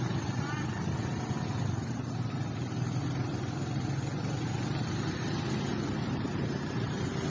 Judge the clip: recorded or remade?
remade